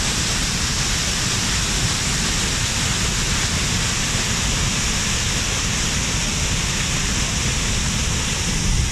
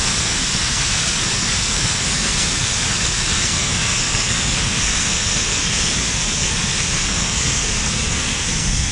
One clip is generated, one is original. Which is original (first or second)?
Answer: first